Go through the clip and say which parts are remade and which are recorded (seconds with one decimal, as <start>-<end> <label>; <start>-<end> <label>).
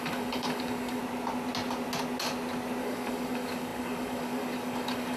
0.0-1.0 remade; 1.0-2.8 recorded; 2.8-5.2 remade